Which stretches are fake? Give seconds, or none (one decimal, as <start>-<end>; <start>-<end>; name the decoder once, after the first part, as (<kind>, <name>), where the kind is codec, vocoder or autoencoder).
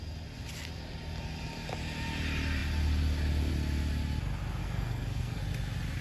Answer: 4.6-5.4 (codec, SNAC)